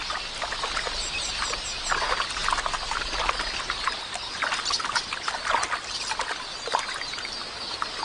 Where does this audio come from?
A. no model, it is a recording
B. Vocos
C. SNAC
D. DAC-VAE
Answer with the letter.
A